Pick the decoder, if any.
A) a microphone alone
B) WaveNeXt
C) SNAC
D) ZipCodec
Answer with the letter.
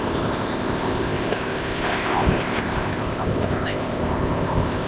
D